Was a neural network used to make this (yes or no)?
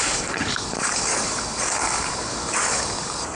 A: yes